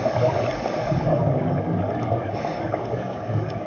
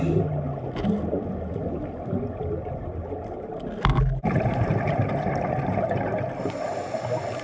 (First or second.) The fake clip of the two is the first